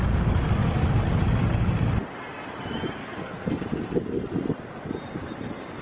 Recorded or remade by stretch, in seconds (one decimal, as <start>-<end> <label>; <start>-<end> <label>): 0.0-3.0 recorded; 3.0-3.6 remade; 3.6-5.8 recorded

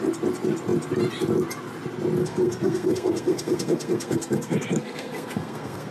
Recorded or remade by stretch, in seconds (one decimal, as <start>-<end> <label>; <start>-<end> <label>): 0.0-2.2 recorded; 2.2-5.9 remade

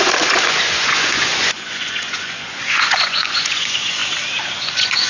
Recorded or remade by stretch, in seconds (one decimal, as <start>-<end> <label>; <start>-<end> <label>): 0.0-4.0 remade; 4.0-4.5 recorded; 4.5-5.1 remade

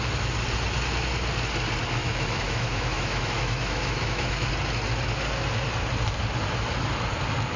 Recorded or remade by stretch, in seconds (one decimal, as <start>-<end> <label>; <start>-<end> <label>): 0.0-2.0 recorded; 2.0-4.5 remade; 4.5-7.6 recorded

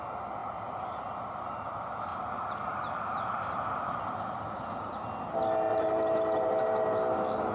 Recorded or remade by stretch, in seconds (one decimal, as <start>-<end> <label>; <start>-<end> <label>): 0.0-2.1 recorded; 2.1-4.0 remade; 4.0-5.7 recorded; 5.7-6.6 remade; 6.6-7.5 recorded

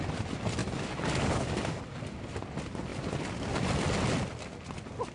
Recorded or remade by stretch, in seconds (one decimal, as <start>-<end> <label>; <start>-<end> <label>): 0.0-0.6 recorded; 0.6-1.8 remade; 1.8-5.1 recorded

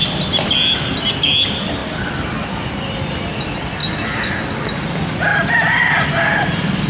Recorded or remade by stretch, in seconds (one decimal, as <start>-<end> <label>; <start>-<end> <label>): 0.0-0.9 remade; 0.9-5.3 recorded; 5.3-6.1 remade; 6.1-6.9 recorded

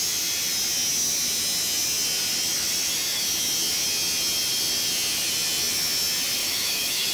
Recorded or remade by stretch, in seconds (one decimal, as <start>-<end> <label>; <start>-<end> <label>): 0.0-6.4 recorded; 6.4-7.1 remade